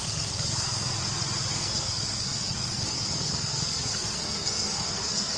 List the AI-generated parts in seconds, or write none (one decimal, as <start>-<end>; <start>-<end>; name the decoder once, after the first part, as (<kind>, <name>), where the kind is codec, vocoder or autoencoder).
0.0-0.9 (codec, SNAC); 1.5-5.4